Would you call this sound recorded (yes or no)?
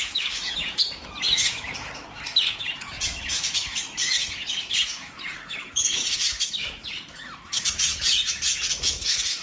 no